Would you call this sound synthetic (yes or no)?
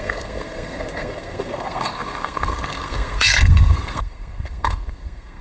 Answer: yes